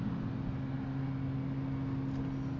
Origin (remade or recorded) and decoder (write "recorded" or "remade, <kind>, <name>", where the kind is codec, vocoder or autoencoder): recorded